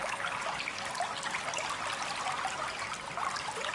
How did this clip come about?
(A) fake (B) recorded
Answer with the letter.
B